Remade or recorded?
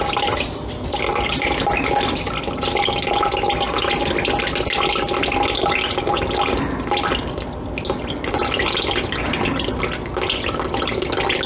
recorded